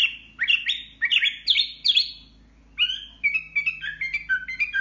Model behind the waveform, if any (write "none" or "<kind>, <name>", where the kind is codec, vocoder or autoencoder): none